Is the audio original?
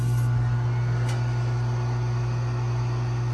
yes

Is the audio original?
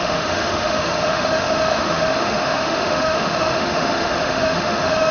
no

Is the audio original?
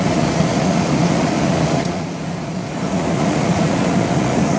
no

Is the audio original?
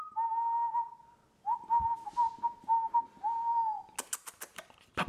yes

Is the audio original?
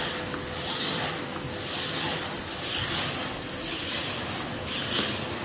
yes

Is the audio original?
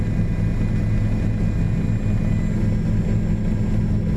yes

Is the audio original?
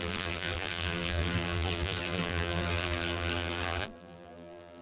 no